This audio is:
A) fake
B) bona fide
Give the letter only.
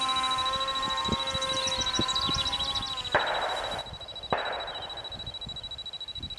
B